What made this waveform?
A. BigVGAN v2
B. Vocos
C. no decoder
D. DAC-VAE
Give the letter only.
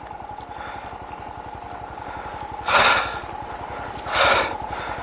C